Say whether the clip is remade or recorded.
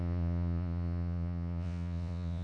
remade